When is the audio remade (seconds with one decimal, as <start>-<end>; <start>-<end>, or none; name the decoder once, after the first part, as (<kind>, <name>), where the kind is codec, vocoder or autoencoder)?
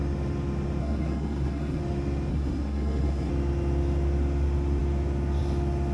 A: 0.8-1.8 (codec, SNAC); 2.3-3.3